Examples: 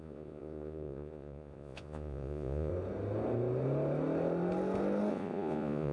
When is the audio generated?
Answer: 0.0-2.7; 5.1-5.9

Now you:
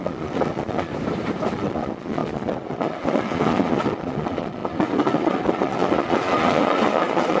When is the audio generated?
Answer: 0.0-0.9; 1.5-7.4

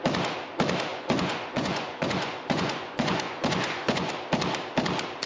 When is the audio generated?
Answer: 0.9-4.1

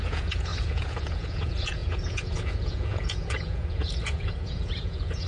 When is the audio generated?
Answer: 0.0-5.3